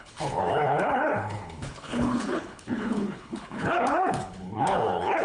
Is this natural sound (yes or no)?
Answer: no